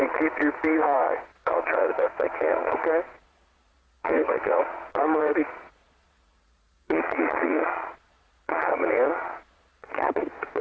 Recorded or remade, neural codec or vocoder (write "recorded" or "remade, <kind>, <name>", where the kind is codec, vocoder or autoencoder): remade, vocoder, Vocos